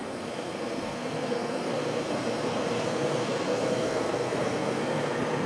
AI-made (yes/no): yes